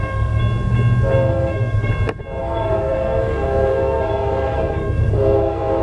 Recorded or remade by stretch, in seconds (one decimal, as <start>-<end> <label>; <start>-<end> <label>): 0.0-0.4 remade; 0.4-1.3 recorded; 1.3-1.9 remade; 1.9-2.4 recorded; 2.4-5.8 remade